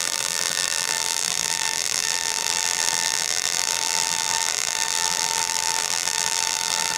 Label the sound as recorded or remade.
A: remade